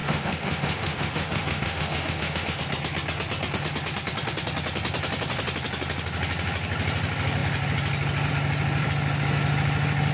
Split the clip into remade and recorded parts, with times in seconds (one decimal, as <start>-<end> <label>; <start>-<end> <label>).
0.0-2.6 remade; 2.6-10.1 recorded